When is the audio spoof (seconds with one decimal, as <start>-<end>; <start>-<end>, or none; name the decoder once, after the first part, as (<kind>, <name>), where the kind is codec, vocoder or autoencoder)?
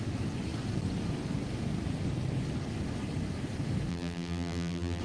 3.9-5.0 (vocoder, BigVGAN v2)